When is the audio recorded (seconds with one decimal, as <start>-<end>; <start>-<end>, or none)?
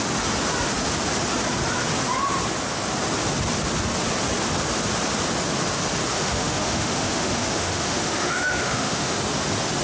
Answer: 0.0-6.1; 9.2-9.8